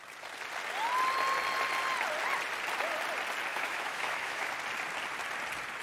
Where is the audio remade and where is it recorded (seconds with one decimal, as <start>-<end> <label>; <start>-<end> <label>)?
0.0-3.5 recorded; 3.5-4.5 remade; 4.5-5.8 recorded